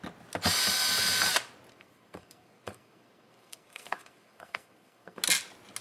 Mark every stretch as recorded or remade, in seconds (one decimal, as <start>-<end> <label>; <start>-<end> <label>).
0.0-1.7 recorded; 1.7-5.2 remade; 5.2-5.8 recorded